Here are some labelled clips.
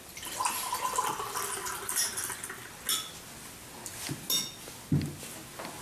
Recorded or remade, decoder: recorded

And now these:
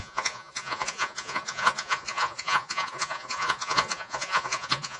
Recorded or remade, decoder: remade, vocoder, Vocos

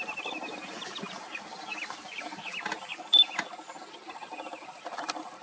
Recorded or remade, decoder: recorded